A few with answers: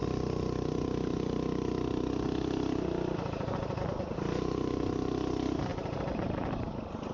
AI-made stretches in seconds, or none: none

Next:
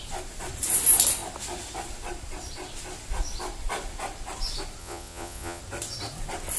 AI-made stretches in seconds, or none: 4.8-5.6 (vocoder, Vocos)

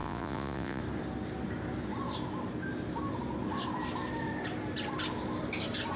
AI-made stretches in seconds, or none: 0.0-0.8 (vocoder, Vocos)